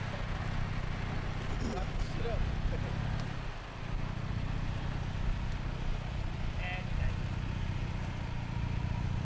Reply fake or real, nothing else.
real